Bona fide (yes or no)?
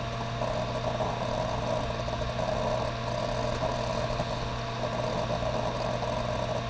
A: yes